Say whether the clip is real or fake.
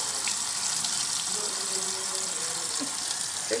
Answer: real